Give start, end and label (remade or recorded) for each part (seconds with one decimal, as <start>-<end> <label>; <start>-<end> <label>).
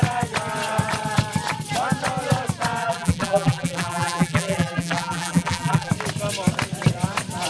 0.0-2.8 recorded; 2.8-5.9 remade; 5.9-7.5 recorded